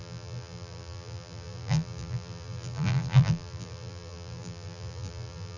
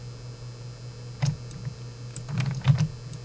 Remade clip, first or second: first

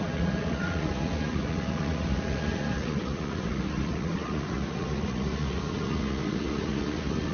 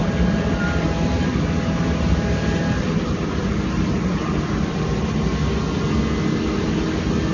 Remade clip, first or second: first